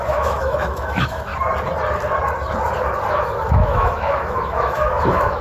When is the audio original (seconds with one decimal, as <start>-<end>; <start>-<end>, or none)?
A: 1.3-3.1